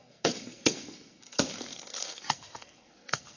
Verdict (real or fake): fake